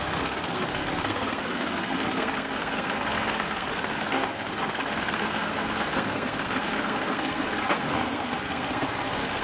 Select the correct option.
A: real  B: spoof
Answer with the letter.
B